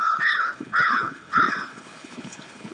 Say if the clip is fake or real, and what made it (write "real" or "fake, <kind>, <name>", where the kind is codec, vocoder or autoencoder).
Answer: fake, codec, HILCodec